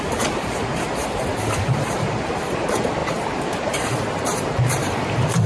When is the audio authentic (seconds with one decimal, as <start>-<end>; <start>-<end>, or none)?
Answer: 1.3-1.8